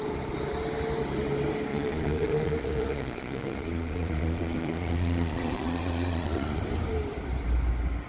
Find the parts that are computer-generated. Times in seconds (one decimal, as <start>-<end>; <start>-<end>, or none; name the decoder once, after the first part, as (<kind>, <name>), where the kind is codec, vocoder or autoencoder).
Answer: 1.7-6.6 (vocoder, Vocos)